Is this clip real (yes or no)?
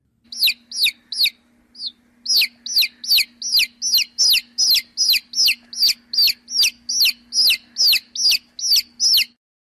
yes